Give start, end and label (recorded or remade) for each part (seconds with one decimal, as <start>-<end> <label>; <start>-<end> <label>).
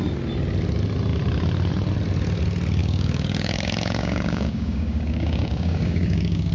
0.0-2.8 recorded; 2.8-6.5 remade